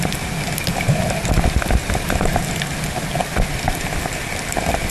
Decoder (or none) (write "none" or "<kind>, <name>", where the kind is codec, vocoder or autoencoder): none